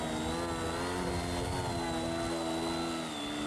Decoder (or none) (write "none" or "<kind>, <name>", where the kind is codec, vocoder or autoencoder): none